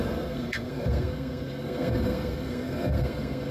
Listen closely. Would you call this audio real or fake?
fake